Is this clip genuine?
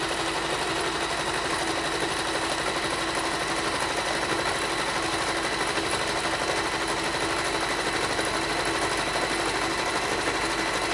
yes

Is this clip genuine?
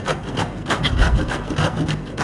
no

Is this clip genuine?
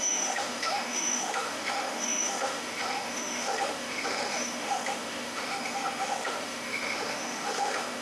no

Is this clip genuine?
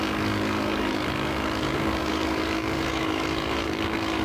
no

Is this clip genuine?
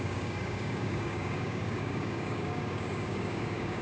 no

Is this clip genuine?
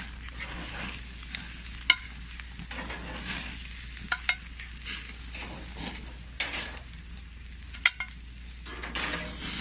yes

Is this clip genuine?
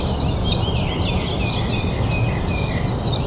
yes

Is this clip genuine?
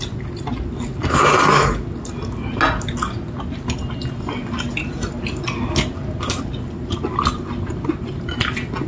yes